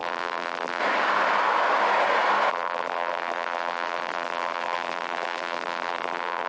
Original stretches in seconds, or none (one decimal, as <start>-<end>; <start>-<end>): 0.8-2.5